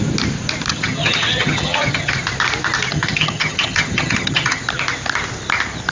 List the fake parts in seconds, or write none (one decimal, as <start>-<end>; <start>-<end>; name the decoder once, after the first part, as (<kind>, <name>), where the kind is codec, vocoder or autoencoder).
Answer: 0.7-2.1 (vocoder, HiFi-GAN); 2.9-4.6